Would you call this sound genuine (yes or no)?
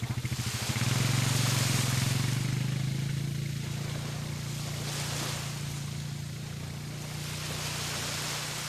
yes